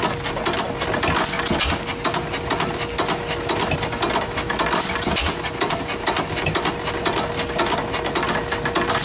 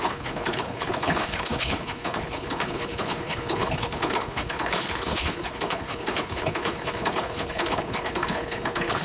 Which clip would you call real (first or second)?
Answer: first